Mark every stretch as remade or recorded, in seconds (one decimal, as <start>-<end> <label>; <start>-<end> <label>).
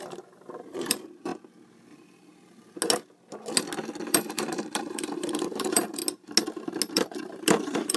0.0-1.3 remade; 1.3-4.1 recorded; 4.1-6.0 remade; 6.0-6.9 recorded; 6.9-8.0 remade